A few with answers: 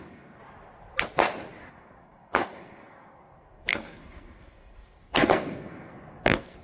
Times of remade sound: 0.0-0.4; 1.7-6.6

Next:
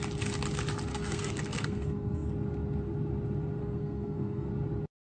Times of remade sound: 0.9-2.3; 3.6-4.5

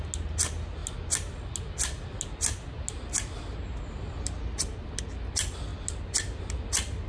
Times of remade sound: none

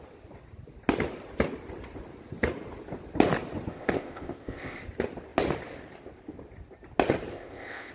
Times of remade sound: 3.7-4.8; 7.3-7.9

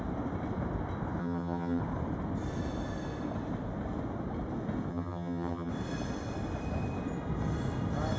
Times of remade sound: 1.2-1.8; 4.9-5.7